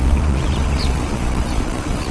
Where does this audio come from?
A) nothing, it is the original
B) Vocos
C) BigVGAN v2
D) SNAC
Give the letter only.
B